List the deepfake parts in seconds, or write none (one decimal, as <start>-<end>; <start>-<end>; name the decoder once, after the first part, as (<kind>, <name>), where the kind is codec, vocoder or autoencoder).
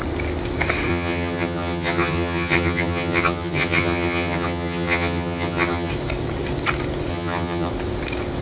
0.9-5.9 (vocoder, HiFi-GAN); 7.1-7.7